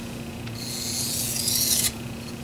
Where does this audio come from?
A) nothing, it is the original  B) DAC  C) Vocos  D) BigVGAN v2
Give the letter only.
C